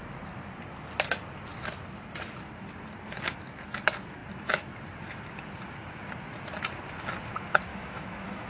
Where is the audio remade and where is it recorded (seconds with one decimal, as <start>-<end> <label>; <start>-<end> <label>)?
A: 0.0-7.7 recorded; 7.7-8.5 remade